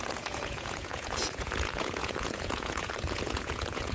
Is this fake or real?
fake